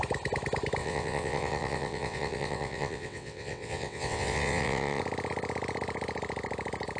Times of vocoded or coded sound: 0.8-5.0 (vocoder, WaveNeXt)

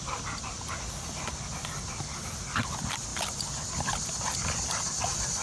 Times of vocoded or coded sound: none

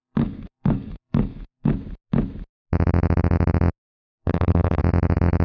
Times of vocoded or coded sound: 0.0-1.7 (codec, SNAC); 4.2-4.8

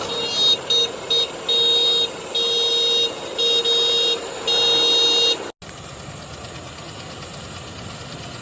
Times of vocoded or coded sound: none

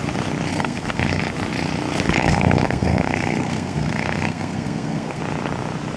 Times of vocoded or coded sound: 0.5-1.2 (codec, SNAC); 2.2-5.2

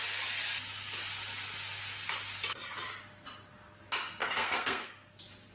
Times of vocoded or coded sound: 4.2-4.9 (codec, SNAC)